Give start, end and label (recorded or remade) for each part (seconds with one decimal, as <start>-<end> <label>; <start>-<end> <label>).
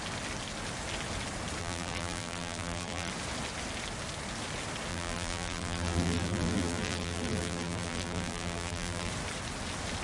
0.0-1.6 recorded; 1.6-3.1 remade; 3.1-4.9 recorded; 4.9-9.1 remade; 9.1-10.0 recorded